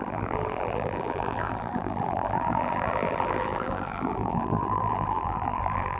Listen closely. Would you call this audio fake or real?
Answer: fake